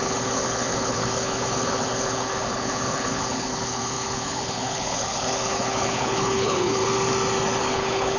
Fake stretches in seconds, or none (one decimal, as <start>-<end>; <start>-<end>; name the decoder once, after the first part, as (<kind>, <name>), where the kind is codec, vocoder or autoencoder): 0.0-6.8 (codec, HILCodec); 7.6-8.2